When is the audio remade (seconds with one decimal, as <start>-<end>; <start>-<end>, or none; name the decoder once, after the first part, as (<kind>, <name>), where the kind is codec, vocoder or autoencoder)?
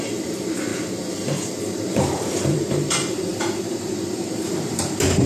0.0-0.7 (vocoder, BigVGAN v2); 1.6-5.3